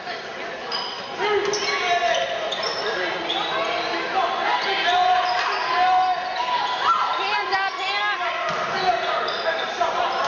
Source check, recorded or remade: recorded